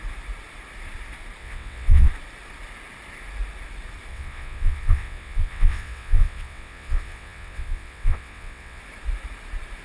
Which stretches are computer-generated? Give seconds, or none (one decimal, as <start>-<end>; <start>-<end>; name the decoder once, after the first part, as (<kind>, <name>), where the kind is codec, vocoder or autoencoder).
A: 1.4-2.1 (vocoder, WaveNeXt); 4.1-8.8